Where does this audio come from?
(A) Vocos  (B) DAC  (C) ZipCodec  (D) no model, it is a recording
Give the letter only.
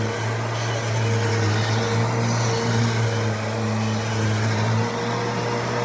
D